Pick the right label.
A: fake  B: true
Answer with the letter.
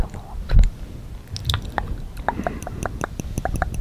B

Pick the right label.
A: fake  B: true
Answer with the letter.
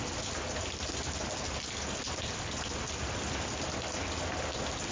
B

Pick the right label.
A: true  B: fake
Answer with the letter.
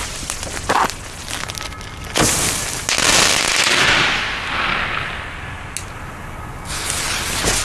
A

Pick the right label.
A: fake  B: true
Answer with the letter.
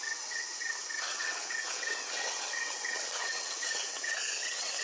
A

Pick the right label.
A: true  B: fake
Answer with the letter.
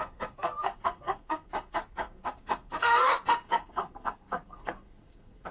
B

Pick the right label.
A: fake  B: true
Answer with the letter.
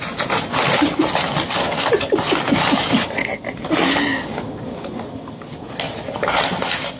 B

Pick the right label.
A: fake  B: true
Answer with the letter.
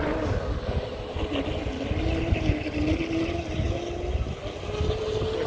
B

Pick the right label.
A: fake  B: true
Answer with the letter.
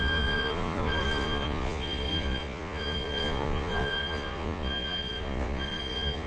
A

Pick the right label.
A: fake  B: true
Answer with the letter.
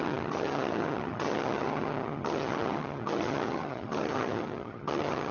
A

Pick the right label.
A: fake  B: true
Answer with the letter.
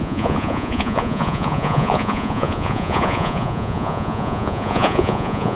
A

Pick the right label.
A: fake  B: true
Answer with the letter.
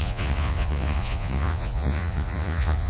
A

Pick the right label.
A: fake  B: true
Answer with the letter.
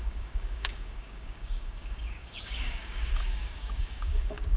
A